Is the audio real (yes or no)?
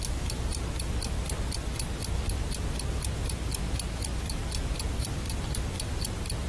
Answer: yes